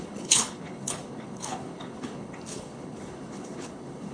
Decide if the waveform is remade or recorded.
remade